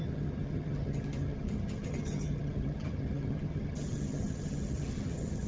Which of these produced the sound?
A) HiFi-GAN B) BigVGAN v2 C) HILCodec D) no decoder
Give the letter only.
A